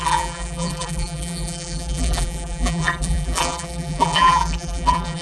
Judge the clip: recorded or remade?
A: remade